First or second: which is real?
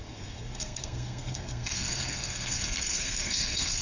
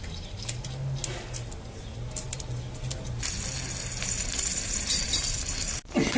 second